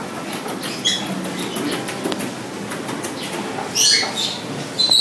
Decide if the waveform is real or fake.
real